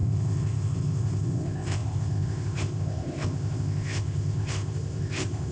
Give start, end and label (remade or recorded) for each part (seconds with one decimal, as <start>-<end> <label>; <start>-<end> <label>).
0.0-5.5 remade